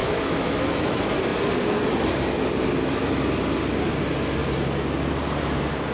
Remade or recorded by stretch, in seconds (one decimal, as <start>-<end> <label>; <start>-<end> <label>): 0.0-0.9 remade; 0.9-5.9 recorded

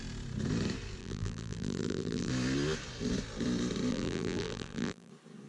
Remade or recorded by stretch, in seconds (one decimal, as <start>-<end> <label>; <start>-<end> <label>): 0.0-1.0 recorded; 1.0-2.3 remade; 2.3-3.9 recorded; 3.9-5.1 remade; 5.1-5.5 recorded

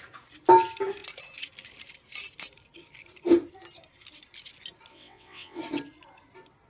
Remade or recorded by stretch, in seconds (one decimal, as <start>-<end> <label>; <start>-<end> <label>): 0.0-4.9 recorded; 4.9-5.6 remade; 5.6-6.7 recorded

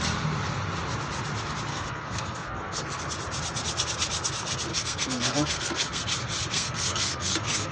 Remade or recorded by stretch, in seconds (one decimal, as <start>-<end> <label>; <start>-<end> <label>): 0.0-1.7 recorded; 1.7-3.0 remade; 3.0-4.7 recorded; 4.7-6.0 remade; 6.0-6.5 recorded; 6.5-7.7 remade

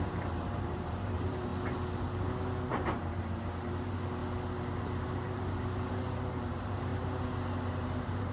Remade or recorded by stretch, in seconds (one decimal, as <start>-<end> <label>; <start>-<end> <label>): 0.0-1.5 remade; 1.5-2.7 recorded; 2.7-4.2 remade; 4.2-4.8 recorded; 4.8-6.9 remade; 6.9-7.7 recorded; 7.7-8.3 remade